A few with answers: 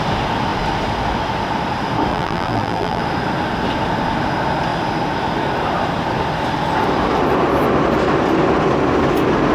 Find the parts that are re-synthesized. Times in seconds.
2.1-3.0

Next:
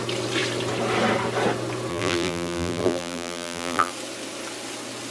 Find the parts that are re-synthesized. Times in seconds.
1.9-3.9